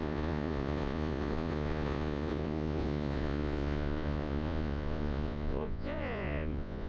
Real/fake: fake